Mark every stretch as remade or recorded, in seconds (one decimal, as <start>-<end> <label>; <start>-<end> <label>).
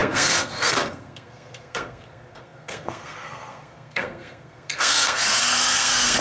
0.0-6.2 remade